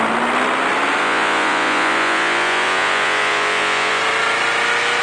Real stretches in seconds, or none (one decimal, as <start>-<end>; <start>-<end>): 0.0-1.0; 4.0-5.0